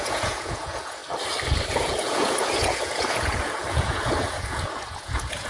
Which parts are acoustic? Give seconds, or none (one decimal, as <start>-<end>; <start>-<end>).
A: 1.0-1.7